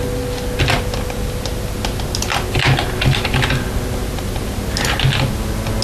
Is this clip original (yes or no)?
yes